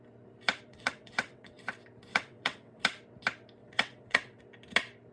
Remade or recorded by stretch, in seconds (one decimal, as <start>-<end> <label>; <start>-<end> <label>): 0.0-0.7 recorded; 0.7-1.6 remade; 1.6-2.1 recorded; 2.1-2.8 remade; 2.8-3.6 recorded; 3.6-4.4 remade; 4.4-5.1 recorded